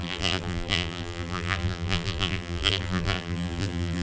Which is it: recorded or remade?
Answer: remade